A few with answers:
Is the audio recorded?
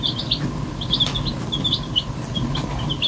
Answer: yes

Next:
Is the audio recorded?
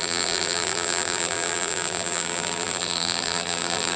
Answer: no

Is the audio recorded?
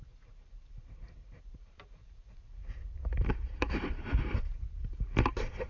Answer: no